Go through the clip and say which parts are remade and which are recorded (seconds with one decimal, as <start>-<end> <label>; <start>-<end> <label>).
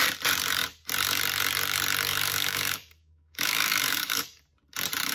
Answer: 0.0-2.1 recorded; 2.1-4.4 remade; 4.4-5.1 recorded